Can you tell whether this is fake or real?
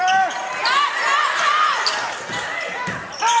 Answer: real